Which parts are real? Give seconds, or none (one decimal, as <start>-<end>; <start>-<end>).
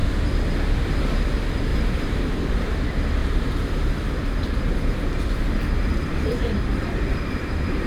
0.0-1.7; 2.7-3.2